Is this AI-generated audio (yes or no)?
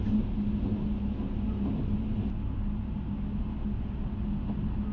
no